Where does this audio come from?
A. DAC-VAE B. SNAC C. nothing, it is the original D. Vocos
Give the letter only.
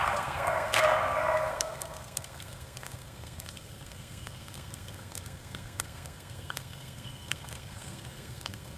B